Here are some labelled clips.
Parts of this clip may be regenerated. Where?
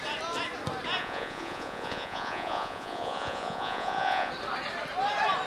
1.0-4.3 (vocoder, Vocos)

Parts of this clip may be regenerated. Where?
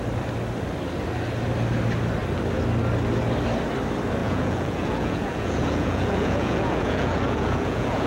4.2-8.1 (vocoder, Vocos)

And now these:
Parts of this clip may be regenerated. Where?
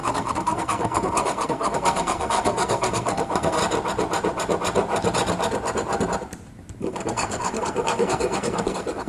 0.0-3.6 (codec, SNAC); 6.8-9.1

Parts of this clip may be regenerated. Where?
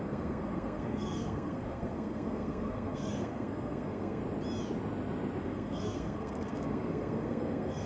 0.0-4.2 (codec, SNAC); 5.4-7.9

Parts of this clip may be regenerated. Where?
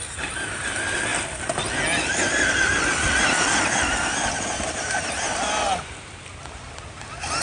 none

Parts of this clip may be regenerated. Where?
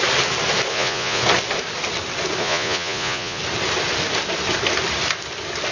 0.7-1.2 (vocoder, Vocos); 2.4-3.4